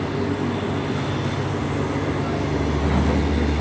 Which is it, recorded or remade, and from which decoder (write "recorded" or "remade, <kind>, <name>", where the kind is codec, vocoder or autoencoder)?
recorded